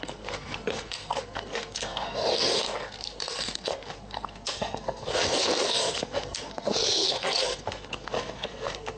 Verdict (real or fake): fake